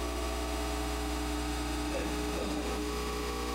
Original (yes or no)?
no